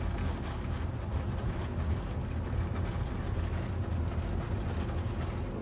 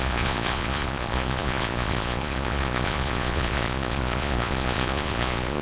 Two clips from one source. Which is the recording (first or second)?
first